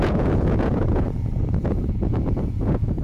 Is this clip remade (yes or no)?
yes